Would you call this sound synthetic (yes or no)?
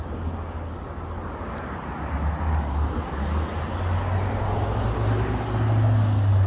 no